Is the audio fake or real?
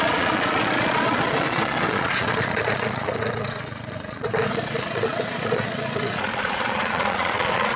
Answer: fake